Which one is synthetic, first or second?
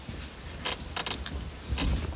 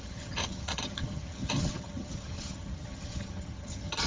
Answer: second